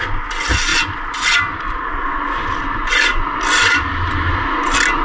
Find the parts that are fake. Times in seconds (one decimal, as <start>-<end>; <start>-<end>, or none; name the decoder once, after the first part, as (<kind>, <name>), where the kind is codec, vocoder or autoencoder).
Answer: none